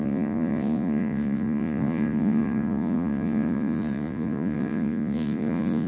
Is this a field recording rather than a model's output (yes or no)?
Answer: no